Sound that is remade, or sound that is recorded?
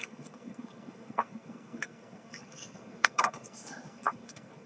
remade